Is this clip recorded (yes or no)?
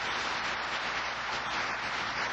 yes